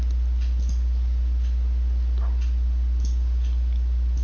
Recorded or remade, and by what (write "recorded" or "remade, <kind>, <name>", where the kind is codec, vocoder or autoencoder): recorded